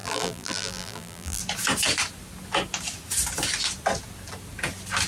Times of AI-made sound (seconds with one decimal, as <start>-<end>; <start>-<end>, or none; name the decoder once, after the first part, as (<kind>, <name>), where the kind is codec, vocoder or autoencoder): 0.0-1.4 (vocoder, BigVGAN v2)

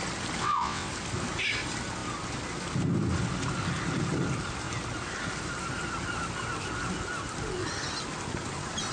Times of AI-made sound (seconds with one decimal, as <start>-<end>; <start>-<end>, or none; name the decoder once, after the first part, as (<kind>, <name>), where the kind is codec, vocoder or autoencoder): 0.4-0.9 (vocoder, WaveNeXt)

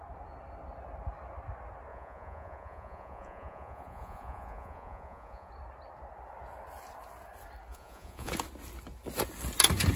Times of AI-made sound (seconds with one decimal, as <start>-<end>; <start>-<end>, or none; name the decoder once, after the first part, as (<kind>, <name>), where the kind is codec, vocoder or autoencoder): 1.9-5.5 (vocoder, Vocos); 7.7-8.3